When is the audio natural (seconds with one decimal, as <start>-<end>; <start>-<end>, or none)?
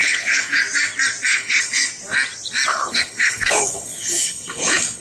0.6-1.3; 1.9-2.7